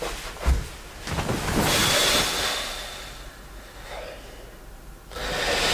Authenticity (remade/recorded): recorded